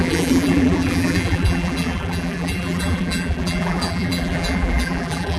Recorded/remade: remade